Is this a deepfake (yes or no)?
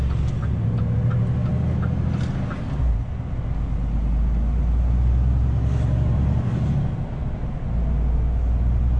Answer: no